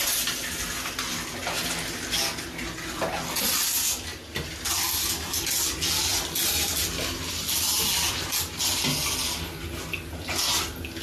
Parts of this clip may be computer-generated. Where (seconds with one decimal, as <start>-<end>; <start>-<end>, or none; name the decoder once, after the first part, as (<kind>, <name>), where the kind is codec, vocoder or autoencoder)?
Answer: none